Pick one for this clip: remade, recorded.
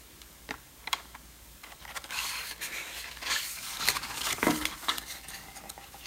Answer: remade